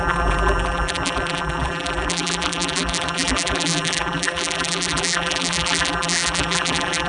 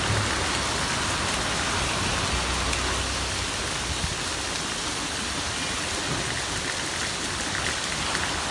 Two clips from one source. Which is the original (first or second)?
second